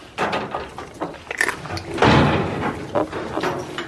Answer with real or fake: real